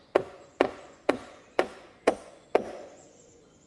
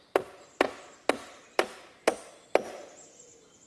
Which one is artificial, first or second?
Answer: first